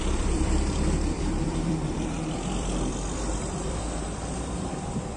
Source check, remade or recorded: remade